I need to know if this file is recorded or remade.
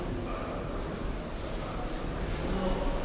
recorded